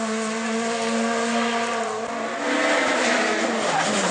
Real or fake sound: real